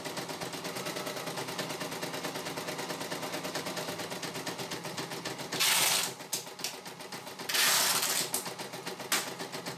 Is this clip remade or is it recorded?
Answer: recorded